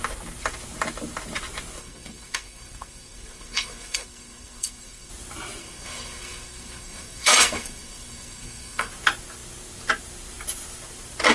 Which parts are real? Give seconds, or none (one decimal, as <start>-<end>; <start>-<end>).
0.0-1.8; 5.1-5.6; 8.9-11.3